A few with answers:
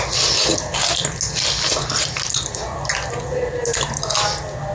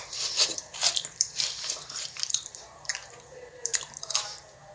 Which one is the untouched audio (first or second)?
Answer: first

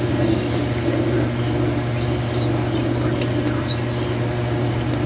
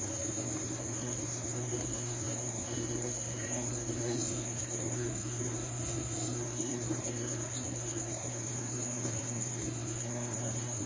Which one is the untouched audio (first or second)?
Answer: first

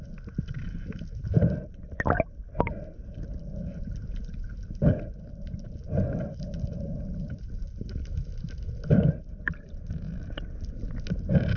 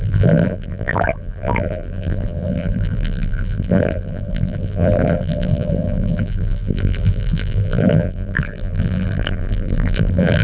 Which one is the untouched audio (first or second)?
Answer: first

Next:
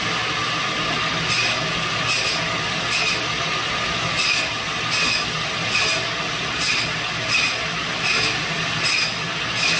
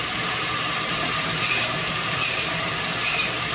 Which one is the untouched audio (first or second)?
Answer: first